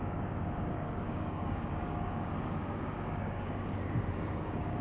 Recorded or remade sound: remade